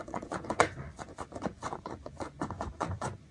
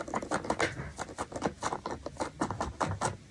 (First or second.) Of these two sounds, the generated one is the first